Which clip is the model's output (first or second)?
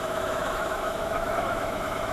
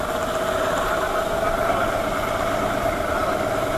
first